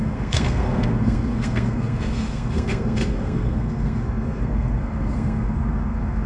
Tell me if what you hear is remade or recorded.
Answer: remade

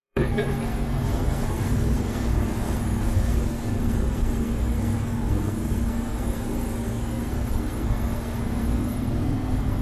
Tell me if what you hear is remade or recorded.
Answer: remade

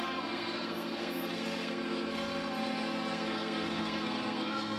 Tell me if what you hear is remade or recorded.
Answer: remade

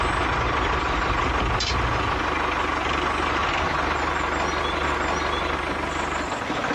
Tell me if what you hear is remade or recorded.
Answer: recorded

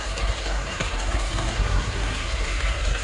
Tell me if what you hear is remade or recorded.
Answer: remade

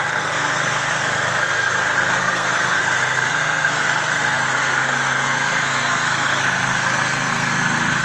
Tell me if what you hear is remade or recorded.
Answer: remade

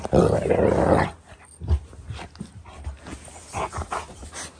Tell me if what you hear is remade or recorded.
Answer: recorded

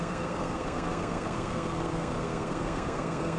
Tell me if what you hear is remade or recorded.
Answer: remade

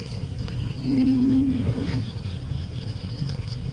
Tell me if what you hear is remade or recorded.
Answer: remade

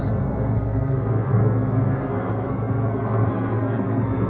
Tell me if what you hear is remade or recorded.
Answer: remade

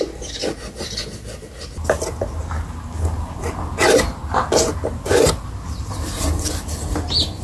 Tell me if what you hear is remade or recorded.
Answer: recorded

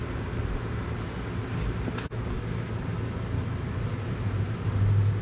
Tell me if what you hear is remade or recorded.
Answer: recorded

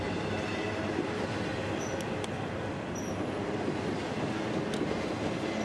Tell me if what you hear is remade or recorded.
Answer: recorded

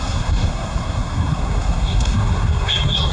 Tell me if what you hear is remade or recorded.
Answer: remade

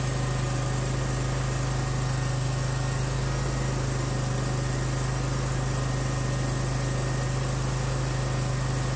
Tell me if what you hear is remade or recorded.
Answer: recorded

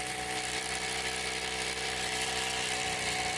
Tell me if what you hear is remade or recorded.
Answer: recorded